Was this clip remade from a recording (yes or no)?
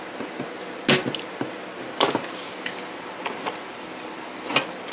no